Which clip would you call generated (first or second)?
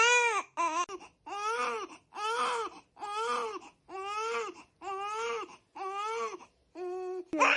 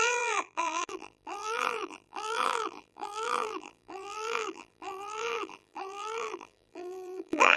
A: second